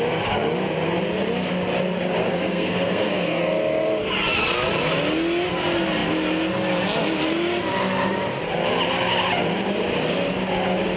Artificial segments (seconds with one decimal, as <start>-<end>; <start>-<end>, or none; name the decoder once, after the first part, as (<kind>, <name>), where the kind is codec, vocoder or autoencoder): 2.2-3.4 (codec, SNAC)